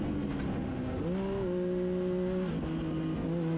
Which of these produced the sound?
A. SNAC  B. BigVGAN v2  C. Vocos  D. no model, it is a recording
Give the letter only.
D